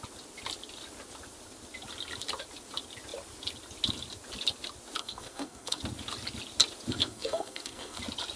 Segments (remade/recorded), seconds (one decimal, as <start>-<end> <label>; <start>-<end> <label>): 0.0-5.0 recorded; 5.0-5.8 remade; 5.8-6.9 recorded; 6.9-8.0 remade; 8.0-8.4 recorded